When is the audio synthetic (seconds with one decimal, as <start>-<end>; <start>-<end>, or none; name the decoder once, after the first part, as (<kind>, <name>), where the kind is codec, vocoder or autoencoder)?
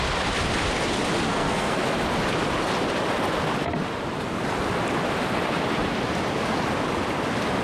1.3-1.8 (codec, SNAC)